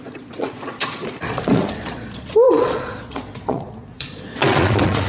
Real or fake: fake